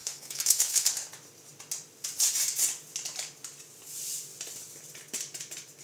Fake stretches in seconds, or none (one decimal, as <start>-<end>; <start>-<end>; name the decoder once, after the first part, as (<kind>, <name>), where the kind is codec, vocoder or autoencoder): 0.0-0.9 (codec, SNAC)